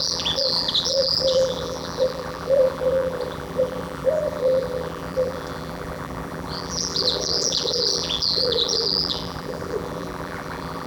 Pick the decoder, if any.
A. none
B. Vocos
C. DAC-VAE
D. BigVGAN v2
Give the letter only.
D